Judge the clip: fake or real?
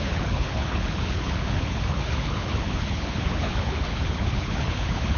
fake